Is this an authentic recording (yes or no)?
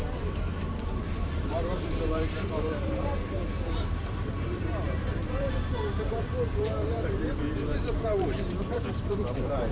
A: no